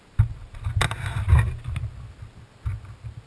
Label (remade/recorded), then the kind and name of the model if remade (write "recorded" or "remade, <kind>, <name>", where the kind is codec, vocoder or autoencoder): recorded